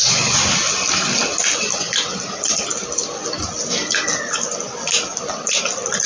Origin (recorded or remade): recorded